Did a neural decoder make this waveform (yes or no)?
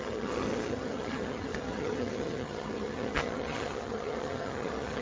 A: yes